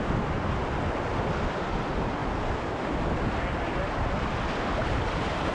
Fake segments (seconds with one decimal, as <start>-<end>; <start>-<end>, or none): none